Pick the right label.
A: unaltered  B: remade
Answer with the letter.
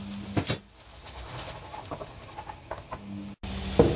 A